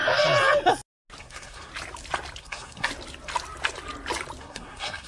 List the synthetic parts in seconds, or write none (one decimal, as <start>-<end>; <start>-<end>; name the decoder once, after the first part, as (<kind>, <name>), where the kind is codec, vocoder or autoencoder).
1.2-1.7 (codec, SNAC); 2.4-2.9; 4.4-5.1

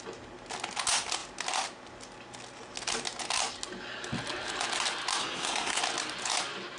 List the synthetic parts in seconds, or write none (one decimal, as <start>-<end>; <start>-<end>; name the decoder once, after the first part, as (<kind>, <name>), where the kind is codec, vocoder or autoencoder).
5.2-5.8 (codec, SNAC)

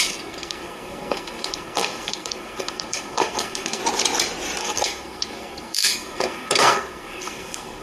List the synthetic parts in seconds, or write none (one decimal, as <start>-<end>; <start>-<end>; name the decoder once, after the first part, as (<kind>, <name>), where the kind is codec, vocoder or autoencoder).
0.0-3.8 (codec, SNAC); 4.6-7.8